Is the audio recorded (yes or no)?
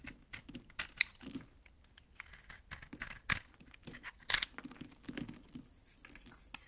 yes